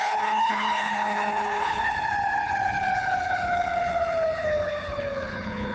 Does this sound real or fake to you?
fake